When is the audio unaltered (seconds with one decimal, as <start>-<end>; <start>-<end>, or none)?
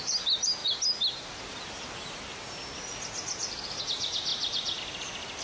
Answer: 0.0-5.4